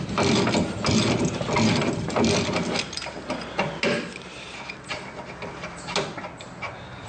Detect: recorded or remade recorded